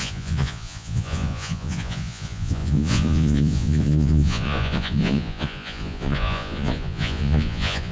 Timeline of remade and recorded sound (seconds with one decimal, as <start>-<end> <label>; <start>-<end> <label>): 0.0-7.9 remade